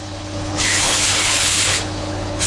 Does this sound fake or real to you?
fake